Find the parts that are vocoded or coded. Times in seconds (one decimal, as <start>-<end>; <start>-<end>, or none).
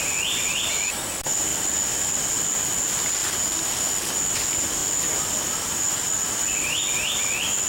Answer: none